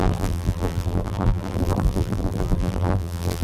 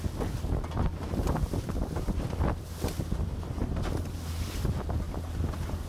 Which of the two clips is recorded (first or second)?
second